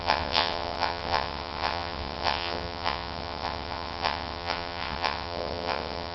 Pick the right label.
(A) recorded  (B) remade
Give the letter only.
B